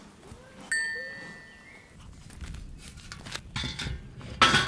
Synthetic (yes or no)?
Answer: no